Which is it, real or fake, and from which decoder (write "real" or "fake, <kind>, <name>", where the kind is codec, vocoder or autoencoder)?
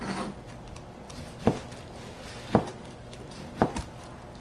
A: real